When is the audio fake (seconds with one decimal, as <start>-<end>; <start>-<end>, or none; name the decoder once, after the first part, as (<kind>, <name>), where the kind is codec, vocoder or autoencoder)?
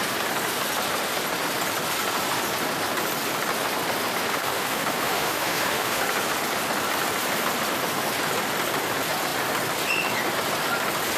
4.3-6.0 (autoencoder, DAC-VAE)